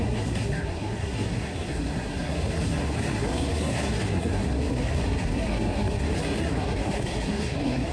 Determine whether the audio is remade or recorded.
remade